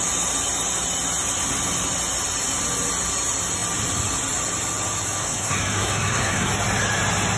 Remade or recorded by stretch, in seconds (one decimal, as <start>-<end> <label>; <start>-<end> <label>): 0.0-5.2 recorded; 5.2-6.5 remade; 6.5-7.4 recorded